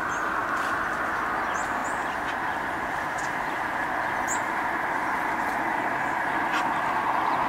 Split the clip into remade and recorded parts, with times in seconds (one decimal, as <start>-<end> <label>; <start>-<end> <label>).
0.0-7.5 recorded